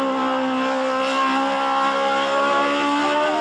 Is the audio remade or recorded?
recorded